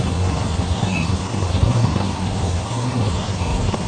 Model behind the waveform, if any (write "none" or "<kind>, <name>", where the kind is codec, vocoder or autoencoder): codec, SNAC